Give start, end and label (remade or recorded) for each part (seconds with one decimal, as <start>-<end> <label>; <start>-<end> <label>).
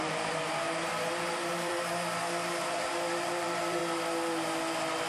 0.0-3.8 remade; 3.8-5.1 recorded